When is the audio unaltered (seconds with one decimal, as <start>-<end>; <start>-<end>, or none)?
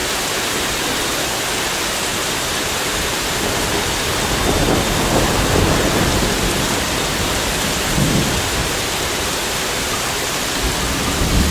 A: 0.8-2.1; 3.6-8.6; 9.6-11.5